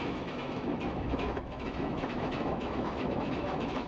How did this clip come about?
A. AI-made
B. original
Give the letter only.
A